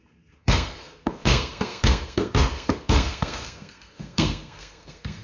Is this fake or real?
fake